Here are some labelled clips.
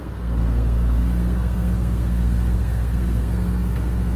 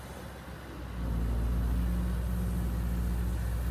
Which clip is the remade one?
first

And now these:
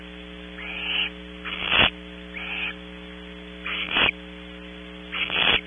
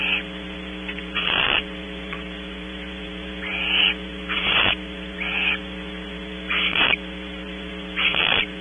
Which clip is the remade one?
second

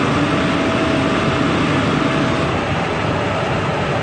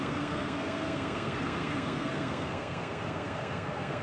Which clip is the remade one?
second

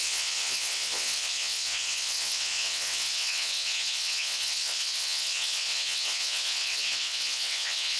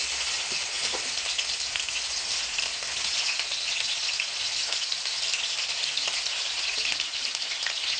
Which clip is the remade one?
first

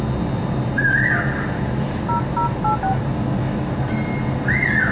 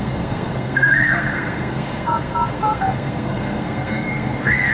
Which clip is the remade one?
second